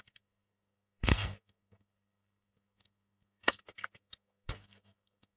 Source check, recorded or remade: remade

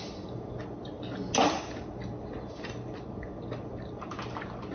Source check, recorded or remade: recorded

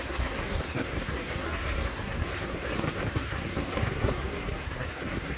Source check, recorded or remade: remade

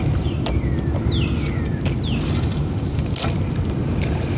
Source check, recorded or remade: recorded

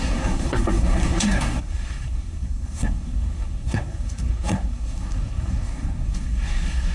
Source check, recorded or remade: remade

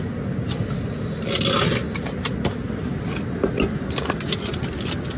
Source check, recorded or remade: recorded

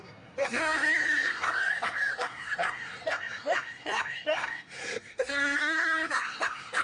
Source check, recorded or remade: remade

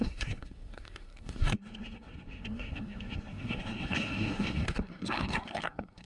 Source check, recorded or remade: remade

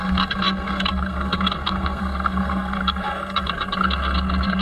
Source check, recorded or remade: remade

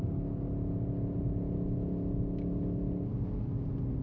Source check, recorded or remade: recorded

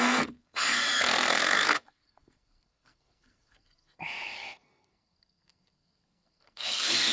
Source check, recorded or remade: remade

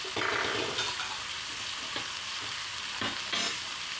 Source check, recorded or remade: recorded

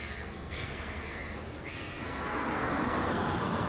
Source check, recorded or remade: remade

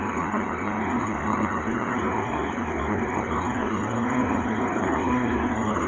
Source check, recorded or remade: remade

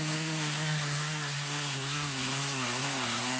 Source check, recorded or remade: remade